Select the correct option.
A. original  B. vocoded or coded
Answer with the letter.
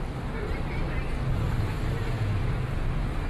A